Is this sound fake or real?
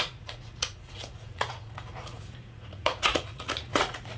fake